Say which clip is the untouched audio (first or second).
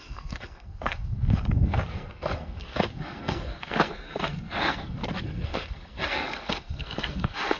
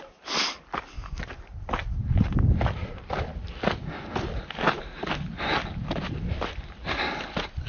second